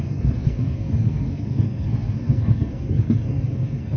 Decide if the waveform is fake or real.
fake